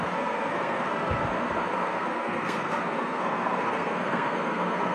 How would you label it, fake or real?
fake